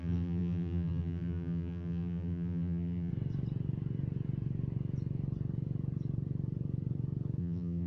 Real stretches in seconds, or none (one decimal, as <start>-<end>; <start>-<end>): 3.1-7.4